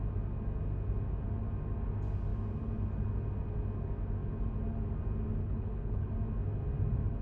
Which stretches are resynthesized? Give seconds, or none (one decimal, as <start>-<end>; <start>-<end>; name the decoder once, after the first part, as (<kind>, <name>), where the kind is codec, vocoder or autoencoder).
5.4-6.1 (codec, HILCodec)